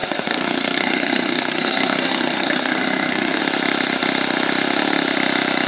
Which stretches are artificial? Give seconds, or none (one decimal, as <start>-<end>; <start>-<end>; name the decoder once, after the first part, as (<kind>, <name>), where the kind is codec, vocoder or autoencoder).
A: 0.0-3.4 (codec, SNAC)